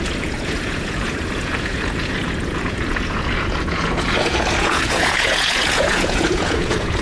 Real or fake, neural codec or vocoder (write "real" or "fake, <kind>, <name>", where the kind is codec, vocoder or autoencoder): fake, vocoder, Vocos